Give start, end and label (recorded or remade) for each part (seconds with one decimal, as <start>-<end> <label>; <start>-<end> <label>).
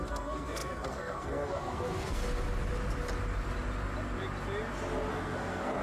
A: 0.0-2.2 remade; 2.2-5.1 recorded; 5.1-5.8 remade